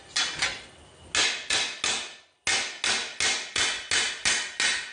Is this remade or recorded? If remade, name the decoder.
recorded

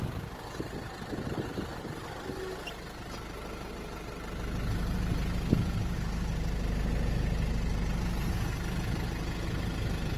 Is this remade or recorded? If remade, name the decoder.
recorded